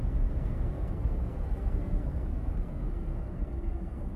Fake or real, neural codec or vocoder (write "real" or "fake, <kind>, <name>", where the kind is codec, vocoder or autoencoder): fake, codec, SNAC